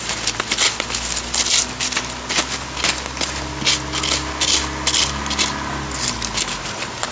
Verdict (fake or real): real